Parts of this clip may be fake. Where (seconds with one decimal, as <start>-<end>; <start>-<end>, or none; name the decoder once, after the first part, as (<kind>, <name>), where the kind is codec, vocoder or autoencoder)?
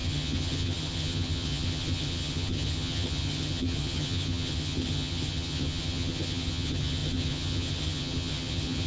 0.0-8.9 (vocoder, HiFi-GAN)